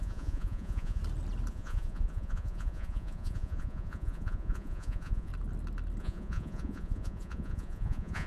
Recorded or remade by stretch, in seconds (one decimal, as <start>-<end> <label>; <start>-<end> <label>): 0.0-1.0 remade; 1.0-1.5 recorded; 1.5-5.3 remade; 5.3-6.0 recorded; 6.0-8.3 remade